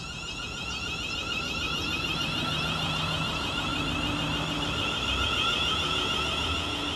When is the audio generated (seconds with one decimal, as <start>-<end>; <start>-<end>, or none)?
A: 0.0-3.7; 5.2-7.0

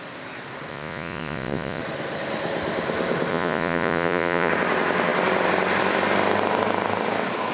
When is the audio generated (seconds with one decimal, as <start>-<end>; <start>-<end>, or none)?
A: 0.7-1.8; 3.3-4.5

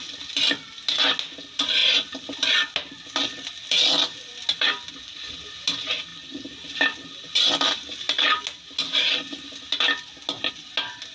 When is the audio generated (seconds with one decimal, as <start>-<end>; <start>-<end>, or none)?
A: none

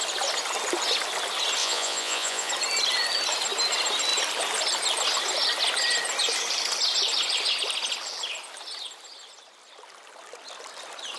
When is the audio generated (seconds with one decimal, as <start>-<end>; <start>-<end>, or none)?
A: 1.6-2.5

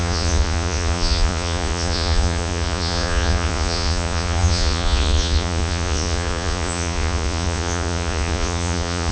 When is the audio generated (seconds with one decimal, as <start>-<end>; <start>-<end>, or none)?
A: 0.0-9.1

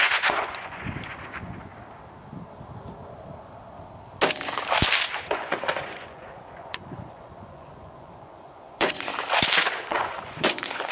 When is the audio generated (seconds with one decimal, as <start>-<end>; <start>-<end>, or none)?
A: 0.0-1.7; 5.2-9.1; 9.7-10.9